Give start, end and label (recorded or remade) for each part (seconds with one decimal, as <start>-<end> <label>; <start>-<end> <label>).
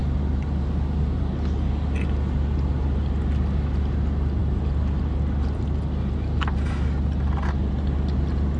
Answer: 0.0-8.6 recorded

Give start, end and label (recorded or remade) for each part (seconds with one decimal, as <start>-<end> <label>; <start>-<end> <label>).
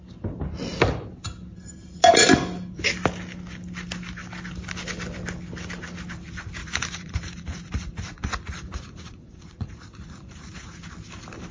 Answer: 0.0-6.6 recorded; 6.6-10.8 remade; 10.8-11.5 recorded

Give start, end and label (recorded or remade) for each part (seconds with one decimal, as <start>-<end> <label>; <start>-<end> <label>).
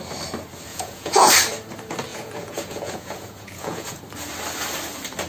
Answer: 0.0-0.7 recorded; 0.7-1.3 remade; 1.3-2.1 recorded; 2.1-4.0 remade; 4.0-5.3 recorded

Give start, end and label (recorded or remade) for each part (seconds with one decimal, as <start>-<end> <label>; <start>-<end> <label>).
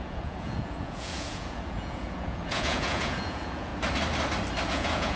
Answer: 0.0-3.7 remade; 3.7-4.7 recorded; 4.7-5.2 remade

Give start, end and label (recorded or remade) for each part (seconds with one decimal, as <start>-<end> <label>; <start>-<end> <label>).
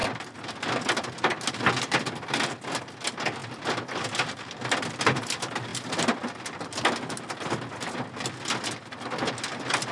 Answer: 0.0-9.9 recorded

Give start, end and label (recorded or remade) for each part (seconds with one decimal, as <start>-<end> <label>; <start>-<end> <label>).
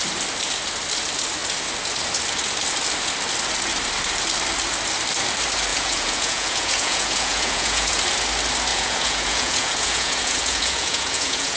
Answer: 0.0-5.7 recorded; 5.7-8.0 remade; 8.0-8.7 recorded; 8.7-11.6 remade